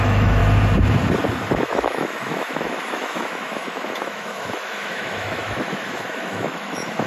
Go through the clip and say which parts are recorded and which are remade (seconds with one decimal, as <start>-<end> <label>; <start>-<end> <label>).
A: 0.0-0.4 remade; 0.4-1.5 recorded; 1.5-7.1 remade